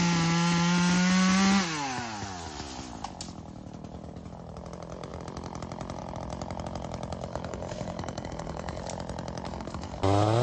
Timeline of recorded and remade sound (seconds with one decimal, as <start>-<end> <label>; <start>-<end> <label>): 0.0-7.3 recorded; 7.3-8.8 remade; 8.8-9.5 recorded; 9.5-10.0 remade; 10.0-10.4 recorded